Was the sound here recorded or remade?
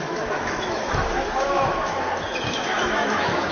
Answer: remade